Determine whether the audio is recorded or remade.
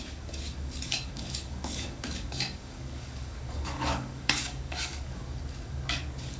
remade